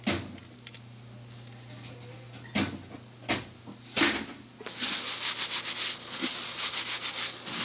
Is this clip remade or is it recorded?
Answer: recorded